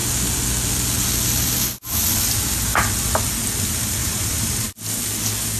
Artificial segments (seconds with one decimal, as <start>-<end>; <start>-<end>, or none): 4.0-4.7